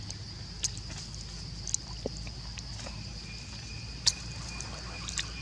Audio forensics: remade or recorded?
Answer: recorded